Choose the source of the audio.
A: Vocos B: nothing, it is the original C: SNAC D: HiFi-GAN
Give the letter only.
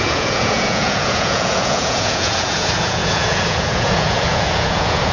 A